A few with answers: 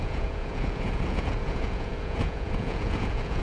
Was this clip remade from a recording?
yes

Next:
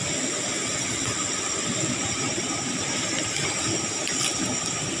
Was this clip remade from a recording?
no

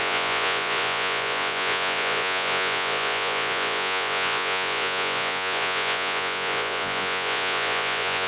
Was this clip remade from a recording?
yes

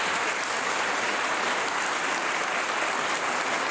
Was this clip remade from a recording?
no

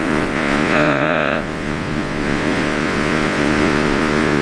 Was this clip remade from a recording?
yes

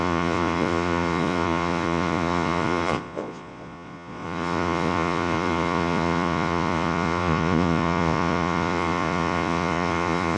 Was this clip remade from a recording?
yes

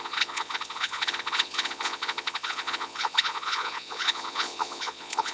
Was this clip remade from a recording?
yes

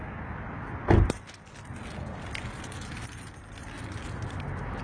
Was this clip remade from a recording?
no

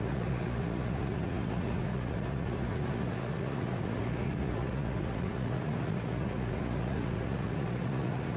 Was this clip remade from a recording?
yes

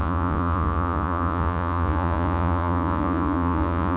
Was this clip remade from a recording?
yes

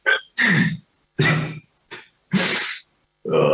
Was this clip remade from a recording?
no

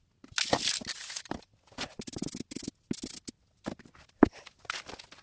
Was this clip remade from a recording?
no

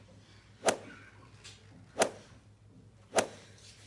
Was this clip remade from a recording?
no